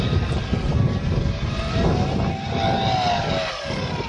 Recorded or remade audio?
recorded